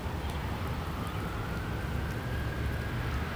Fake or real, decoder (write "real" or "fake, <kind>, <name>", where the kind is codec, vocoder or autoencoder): real